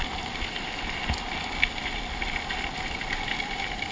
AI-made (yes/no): no